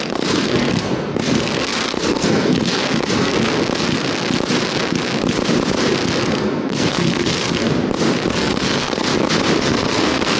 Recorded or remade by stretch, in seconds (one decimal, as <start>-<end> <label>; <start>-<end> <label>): 0.0-3.5 remade; 3.5-6.2 recorded; 6.2-7.7 remade; 7.7-8.3 recorded; 8.3-9.1 remade; 9.1-9.6 recorded; 9.6-10.4 remade